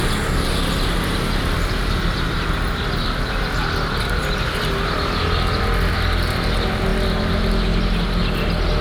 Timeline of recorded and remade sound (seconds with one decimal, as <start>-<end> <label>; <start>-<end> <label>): 0.0-8.8 recorded